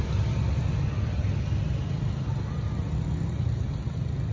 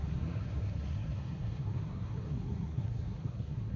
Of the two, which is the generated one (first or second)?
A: second